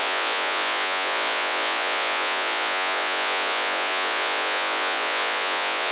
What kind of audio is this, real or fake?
fake